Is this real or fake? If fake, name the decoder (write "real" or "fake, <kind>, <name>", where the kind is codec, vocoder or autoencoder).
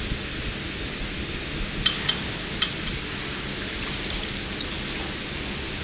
real